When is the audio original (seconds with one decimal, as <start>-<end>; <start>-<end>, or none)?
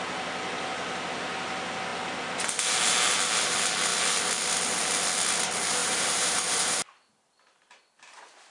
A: 0.0-5.8; 6.9-8.5